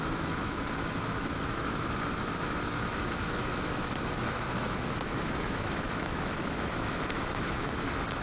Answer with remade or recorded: remade